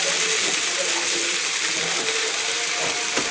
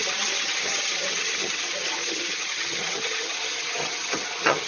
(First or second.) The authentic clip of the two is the first